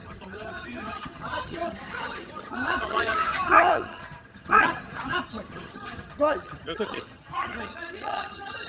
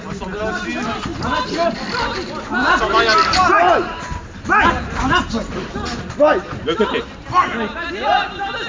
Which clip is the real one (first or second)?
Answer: second